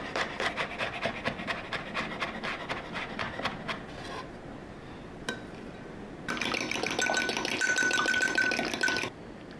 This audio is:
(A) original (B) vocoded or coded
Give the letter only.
A